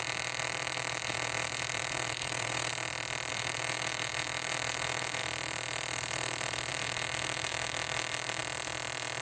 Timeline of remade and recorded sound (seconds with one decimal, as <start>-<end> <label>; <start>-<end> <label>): 0.0-2.7 remade; 2.7-3.3 recorded; 3.3-5.2 remade; 5.2-6.7 recorded; 6.7-8.4 remade; 8.4-9.2 recorded